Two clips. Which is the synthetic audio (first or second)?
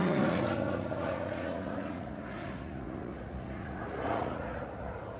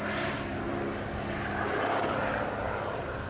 first